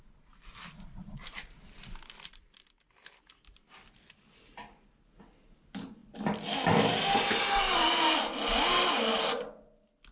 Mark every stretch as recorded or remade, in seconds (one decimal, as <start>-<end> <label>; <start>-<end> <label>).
0.0-10.1 recorded